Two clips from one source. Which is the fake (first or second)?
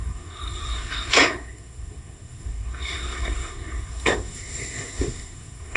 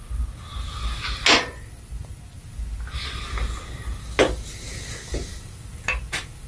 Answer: first